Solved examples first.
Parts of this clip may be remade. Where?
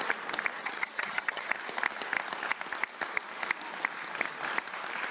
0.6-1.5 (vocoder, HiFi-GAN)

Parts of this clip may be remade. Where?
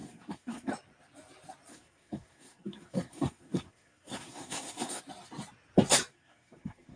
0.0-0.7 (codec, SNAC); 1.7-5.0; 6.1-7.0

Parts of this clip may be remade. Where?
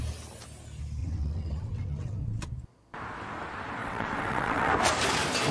1.0-2.5 (vocoder, WaveNeXt); 3.8-4.7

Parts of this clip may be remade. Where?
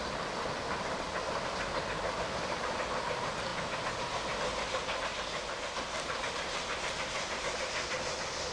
0.0-3.5 (vocoder, BigVGAN v2); 4.0-8.5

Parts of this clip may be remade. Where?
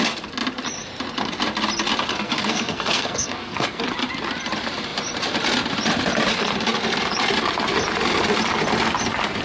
2.1-3.8 (codec, SNAC)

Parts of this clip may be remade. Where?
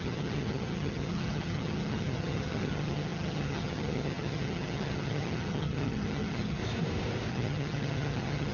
0.0-6.6 (vocoder, HiFi-GAN); 7.3-8.5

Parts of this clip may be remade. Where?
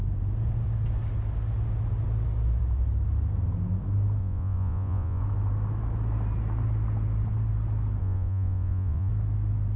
4.2-5.2 (vocoder, Vocos); 8.0-9.1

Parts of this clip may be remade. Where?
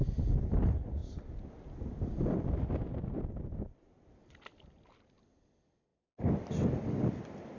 none